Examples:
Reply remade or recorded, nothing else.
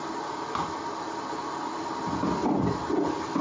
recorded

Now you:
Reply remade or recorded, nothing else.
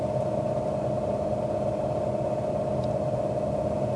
recorded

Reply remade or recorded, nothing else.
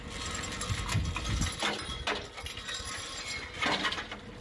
recorded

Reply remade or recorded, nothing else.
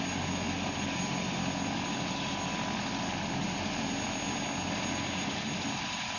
recorded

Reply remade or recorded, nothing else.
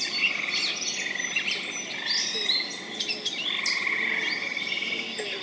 recorded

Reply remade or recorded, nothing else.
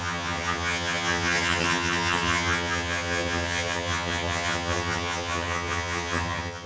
remade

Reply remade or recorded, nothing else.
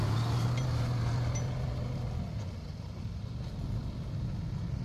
recorded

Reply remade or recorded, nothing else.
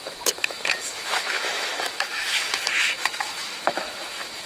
remade